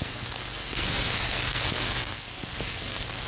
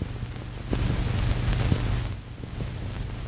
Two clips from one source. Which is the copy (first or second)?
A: first